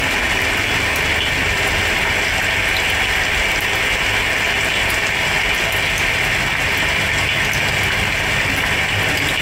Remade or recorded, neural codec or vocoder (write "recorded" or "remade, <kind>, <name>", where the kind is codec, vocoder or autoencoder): recorded